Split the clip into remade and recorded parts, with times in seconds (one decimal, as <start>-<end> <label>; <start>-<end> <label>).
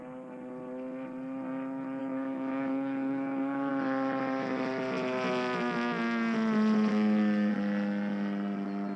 0.0-2.0 recorded; 2.0-3.7 remade; 3.7-6.9 recorded; 6.9-7.5 remade; 7.5-9.0 recorded